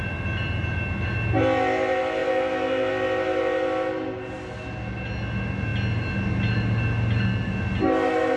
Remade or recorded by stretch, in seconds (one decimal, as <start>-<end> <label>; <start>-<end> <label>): 0.0-2.2 recorded; 2.2-2.9 remade; 2.9-8.4 recorded